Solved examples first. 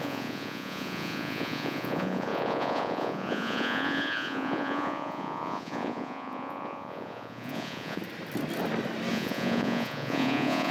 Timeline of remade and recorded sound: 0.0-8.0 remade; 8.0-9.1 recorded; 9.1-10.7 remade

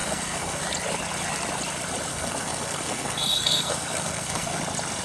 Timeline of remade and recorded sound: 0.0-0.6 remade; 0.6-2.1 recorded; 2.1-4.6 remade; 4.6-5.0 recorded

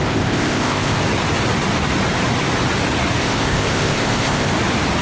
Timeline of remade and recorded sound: 0.0-1.0 remade; 1.0-3.2 recorded; 3.2-4.5 remade; 4.5-5.0 recorded

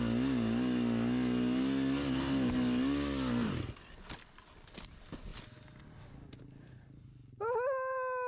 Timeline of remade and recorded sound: 0.0-8.3 recorded

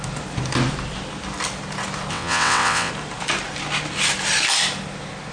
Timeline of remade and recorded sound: 0.0-2.1 recorded; 2.1-2.9 remade; 2.9-5.3 recorded